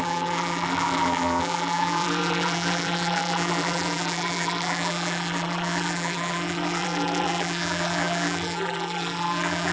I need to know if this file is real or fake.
fake